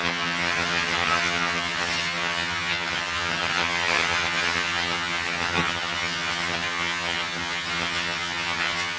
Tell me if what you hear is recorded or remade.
remade